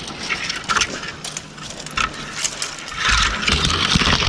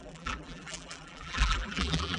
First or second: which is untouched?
first